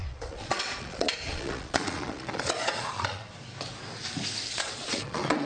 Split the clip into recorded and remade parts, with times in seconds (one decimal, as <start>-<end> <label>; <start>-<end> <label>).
0.0-3.3 remade; 3.3-4.5 recorded; 4.5-5.5 remade